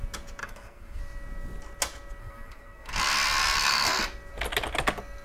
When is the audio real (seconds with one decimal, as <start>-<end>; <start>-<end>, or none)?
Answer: 0.0-0.4; 1.0-2.2; 3.0-3.4; 4.0-5.2